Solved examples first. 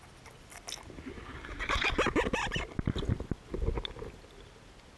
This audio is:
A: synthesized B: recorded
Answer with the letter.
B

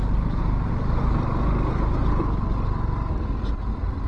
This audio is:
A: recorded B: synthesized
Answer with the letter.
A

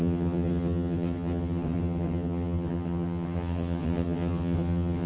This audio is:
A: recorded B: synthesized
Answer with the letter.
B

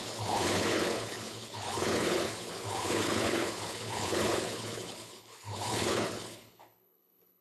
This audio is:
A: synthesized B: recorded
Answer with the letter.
A